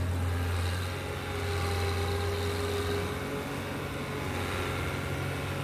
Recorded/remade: recorded